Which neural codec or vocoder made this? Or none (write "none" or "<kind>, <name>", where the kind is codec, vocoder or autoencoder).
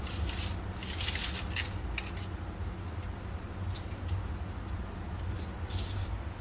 none